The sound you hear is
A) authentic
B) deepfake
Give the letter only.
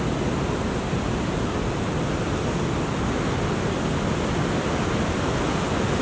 A